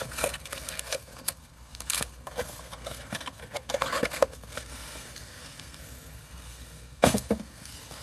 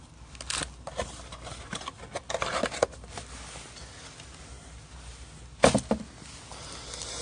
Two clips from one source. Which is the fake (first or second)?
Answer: first